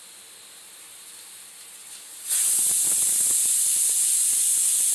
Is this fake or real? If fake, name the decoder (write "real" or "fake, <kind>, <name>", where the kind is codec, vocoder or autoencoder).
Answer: real